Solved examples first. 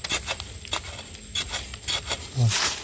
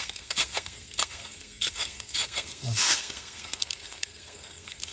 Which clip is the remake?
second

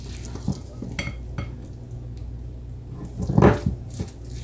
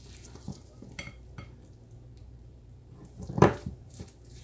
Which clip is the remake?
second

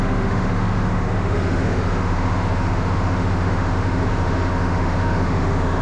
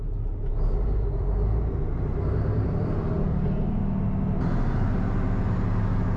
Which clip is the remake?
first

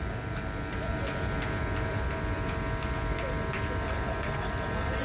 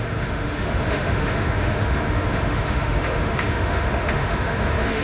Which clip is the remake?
second